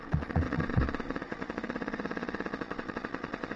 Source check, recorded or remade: remade